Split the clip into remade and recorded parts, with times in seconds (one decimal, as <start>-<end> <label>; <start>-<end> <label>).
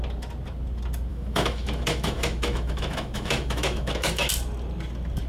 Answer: 0.0-1.1 recorded; 1.1-4.3 remade; 4.3-5.3 recorded